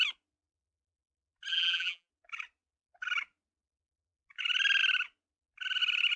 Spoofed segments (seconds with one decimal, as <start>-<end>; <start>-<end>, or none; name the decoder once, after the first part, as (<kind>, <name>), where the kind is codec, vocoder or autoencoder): 1.5-2.1 (vocoder, BigVGAN v2)